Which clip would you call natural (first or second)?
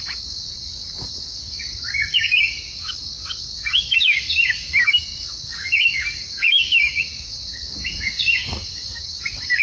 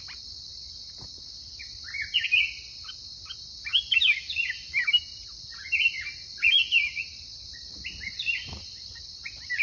second